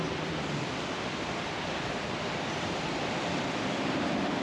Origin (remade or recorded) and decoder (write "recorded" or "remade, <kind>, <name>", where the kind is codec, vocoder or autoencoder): remade, vocoder, BigVGAN v2